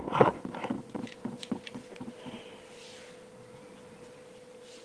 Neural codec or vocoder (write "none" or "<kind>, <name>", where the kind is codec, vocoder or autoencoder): vocoder, Vocos